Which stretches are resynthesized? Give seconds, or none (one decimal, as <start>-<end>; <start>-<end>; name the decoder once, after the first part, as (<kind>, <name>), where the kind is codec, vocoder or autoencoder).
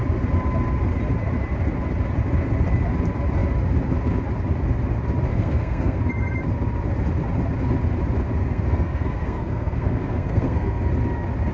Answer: 5.3-6.0 (codec, SNAC); 8.4-10.9